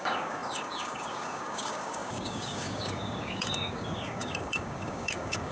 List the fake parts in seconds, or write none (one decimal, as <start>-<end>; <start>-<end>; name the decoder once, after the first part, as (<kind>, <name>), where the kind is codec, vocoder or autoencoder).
0.0-5.5 (codec, DAC)